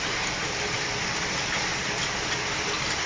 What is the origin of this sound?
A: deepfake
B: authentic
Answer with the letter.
B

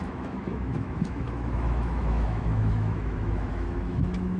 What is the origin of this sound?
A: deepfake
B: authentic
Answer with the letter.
A